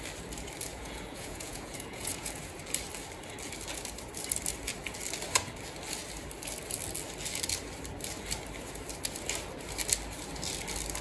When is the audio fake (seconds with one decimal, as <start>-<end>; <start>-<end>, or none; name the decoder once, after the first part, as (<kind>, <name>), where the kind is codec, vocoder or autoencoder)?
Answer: 0.7-2.3 (vocoder, Vocos)